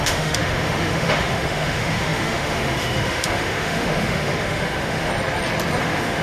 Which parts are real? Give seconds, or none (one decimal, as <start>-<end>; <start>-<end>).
5.1-5.8